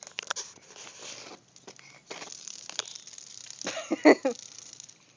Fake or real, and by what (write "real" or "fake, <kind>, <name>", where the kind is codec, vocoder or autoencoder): real